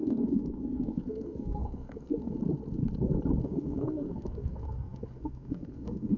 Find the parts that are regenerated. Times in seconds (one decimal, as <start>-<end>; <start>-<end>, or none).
0.0-2.4; 3.4-6.2